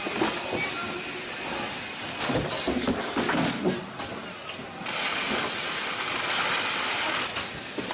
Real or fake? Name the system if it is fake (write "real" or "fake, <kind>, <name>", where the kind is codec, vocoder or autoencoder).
real